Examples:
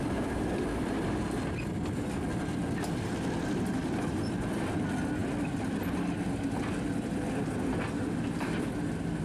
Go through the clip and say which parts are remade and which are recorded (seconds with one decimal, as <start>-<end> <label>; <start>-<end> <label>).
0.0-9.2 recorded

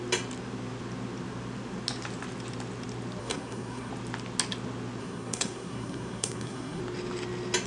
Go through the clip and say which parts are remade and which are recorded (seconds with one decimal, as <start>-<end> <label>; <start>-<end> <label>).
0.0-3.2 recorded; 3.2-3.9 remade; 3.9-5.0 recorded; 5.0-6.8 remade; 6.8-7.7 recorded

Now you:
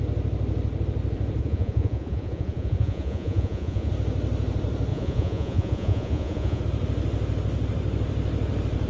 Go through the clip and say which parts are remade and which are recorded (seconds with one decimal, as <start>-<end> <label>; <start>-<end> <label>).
0.0-1.4 recorded; 1.4-3.9 remade; 3.9-4.9 recorded; 4.9-6.6 remade; 6.6-8.9 recorded